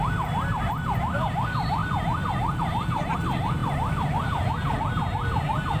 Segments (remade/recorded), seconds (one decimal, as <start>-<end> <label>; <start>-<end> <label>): 0.0-5.8 recorded